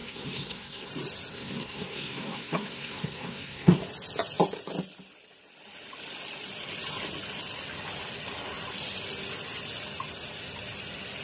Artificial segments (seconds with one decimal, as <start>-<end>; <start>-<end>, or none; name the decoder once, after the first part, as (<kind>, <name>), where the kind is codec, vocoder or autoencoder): 0.0-0.9 (codec, SNAC); 1.3-3.8